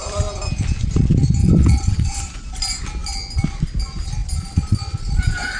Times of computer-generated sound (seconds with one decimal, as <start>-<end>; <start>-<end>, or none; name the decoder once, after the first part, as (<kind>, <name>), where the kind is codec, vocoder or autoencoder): 1.4-2.2 (vocoder, WaveNeXt)

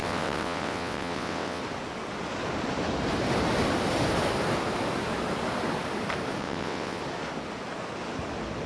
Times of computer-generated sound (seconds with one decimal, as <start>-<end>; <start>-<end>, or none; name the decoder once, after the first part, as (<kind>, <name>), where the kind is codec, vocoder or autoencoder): 0.0-1.6 (vocoder, WaveNeXt); 6.4-7.0